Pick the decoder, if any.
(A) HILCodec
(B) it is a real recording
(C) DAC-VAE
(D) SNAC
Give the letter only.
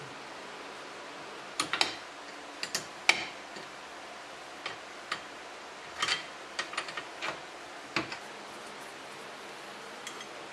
B